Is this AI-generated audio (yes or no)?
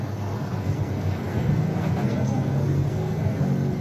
yes